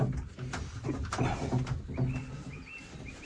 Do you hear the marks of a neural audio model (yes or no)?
no